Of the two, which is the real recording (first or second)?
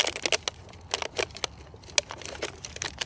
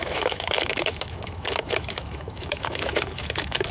first